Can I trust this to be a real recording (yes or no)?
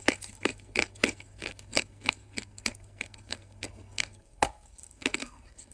no